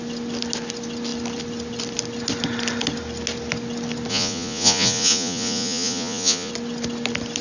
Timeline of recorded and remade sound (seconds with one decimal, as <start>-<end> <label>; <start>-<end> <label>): 0.0-4.1 recorded; 4.1-6.5 remade; 6.5-7.4 recorded